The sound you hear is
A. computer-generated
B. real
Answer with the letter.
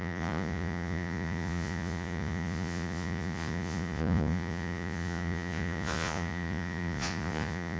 A